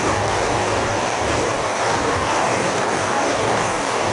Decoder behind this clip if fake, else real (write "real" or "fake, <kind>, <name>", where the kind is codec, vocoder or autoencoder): fake, codec, DAC